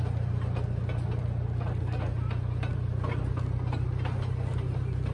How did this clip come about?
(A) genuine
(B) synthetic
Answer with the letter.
A